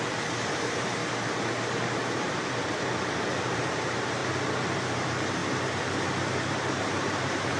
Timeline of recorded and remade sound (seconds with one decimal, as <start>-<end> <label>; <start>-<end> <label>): 0.0-1.0 remade; 1.0-1.7 recorded; 1.7-4.2 remade; 4.2-4.7 recorded; 4.7-5.4 remade; 5.4-6.3 recorded; 6.3-7.6 remade